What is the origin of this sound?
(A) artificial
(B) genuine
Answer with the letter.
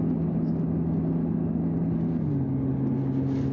B